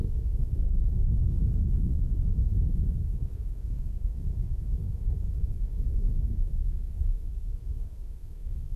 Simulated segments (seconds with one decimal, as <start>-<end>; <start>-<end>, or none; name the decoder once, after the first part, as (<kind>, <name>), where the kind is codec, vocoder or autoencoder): 0.0-8.8 (codec, SNAC)